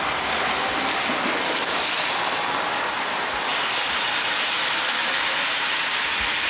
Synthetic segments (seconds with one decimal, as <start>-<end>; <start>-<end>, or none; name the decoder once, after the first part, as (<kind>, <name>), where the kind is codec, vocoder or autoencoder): none